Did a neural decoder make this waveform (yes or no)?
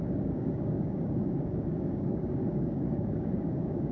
yes